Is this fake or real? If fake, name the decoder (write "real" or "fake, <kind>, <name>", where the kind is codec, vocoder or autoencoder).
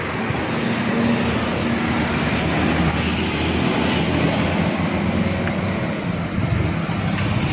real